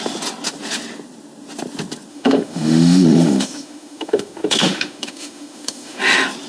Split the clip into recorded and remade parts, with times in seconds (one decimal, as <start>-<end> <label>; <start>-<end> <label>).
0.0-2.1 recorded; 2.1-6.0 remade; 6.0-6.5 recorded